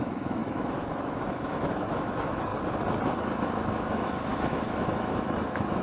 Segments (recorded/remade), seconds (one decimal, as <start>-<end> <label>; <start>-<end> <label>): 0.0-2.5 remade; 2.5-3.2 recorded; 3.2-5.8 remade

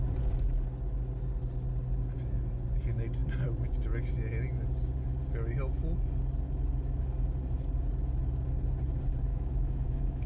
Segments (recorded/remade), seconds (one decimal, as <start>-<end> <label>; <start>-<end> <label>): 0.0-9.3 recorded; 9.3-10.3 remade

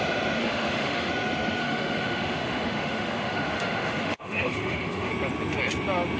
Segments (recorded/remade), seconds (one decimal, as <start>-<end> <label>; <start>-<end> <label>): 0.0-0.4 recorded; 0.4-1.1 remade; 1.1-1.6 recorded; 1.6-5.1 remade; 5.1-6.2 recorded